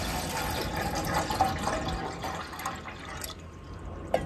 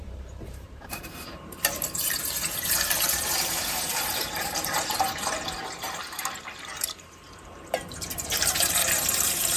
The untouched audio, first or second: first